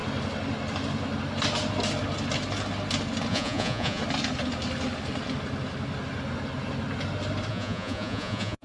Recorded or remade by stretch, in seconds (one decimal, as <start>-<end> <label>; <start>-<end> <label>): 0.0-3.3 recorded; 3.3-4.0 remade; 4.0-7.5 recorded; 7.5-8.6 remade